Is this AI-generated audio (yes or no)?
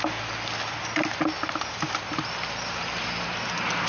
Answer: no